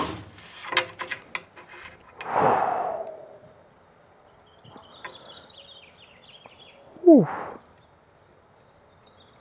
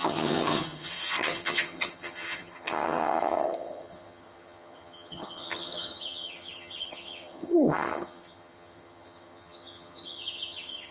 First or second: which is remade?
second